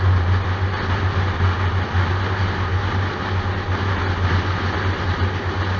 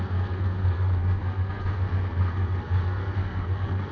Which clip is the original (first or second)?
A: first